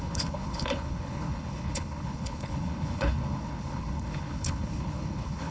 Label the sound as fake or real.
fake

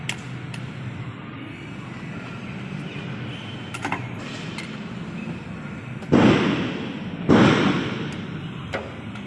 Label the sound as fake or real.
real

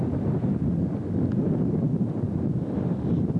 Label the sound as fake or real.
real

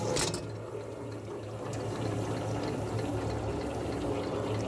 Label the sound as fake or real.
real